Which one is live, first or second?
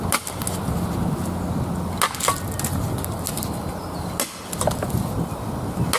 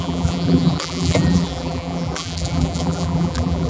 first